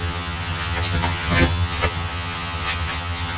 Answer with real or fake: fake